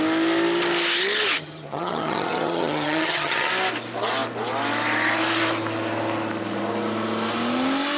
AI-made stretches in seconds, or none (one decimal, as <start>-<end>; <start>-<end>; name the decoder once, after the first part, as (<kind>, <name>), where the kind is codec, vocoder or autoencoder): 1.4-3.5 (vocoder, HiFi-GAN)